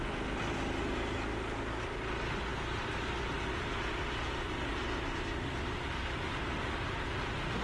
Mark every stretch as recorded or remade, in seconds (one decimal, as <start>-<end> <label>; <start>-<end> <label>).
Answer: 0.0-7.6 recorded